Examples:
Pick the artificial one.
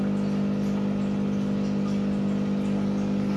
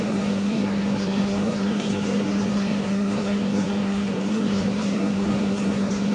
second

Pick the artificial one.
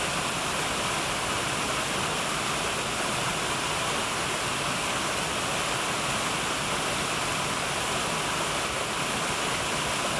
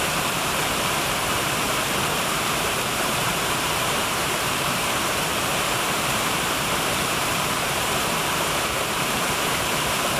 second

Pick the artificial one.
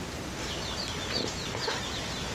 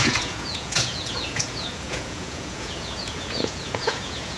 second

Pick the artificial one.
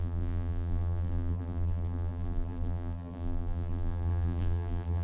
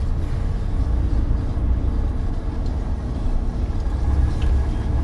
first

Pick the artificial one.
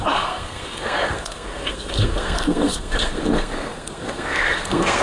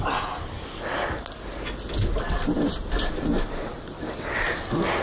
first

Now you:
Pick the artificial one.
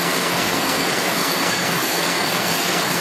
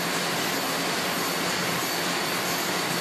first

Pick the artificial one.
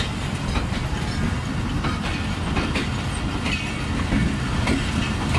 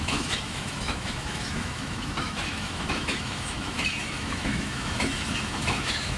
second